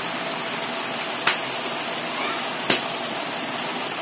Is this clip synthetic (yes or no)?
no